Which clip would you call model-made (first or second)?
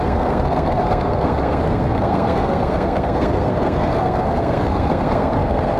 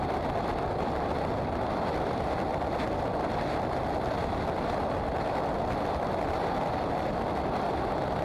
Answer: first